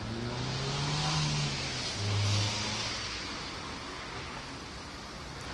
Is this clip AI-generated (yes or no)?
no